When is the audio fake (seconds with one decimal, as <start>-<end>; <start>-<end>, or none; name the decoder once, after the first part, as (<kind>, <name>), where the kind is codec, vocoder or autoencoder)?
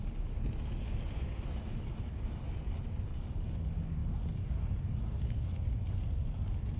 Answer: none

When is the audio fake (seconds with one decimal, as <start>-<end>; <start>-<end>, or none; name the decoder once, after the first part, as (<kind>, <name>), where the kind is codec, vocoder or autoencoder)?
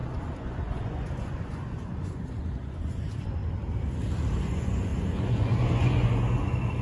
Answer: 0.0-3.4 (vocoder, Vocos); 4.4-6.8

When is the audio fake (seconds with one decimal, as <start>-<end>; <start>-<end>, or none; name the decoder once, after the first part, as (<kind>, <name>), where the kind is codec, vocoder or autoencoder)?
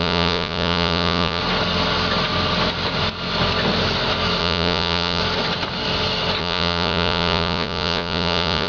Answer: 0.0-1.4 (vocoder, Vocos); 4.4-5.2; 6.4-8.7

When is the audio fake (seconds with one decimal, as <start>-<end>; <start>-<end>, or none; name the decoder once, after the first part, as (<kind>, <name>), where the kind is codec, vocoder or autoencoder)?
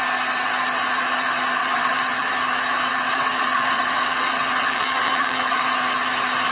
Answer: 1.6-2.3 (vocoder, WaveNeXt); 2.9-5.6